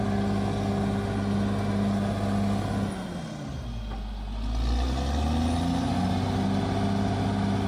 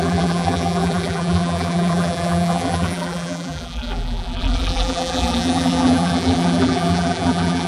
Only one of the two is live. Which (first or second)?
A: first